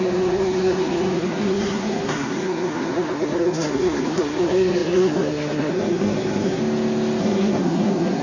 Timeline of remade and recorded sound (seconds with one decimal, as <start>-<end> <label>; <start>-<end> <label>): 0.0-6.6 remade; 6.6-7.2 recorded; 7.2-8.2 remade